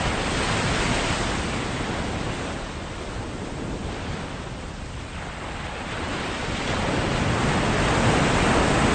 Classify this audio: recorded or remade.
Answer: recorded